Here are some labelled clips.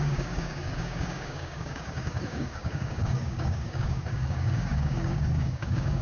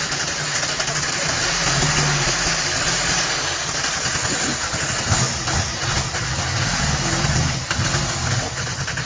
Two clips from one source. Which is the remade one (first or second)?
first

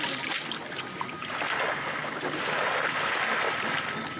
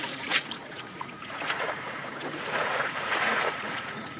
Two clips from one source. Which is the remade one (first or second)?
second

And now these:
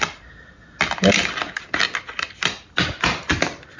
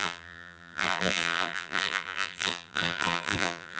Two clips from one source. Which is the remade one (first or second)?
second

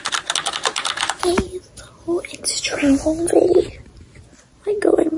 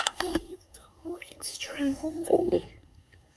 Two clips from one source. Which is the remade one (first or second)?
second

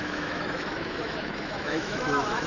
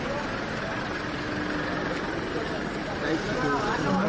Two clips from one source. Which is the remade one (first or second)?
first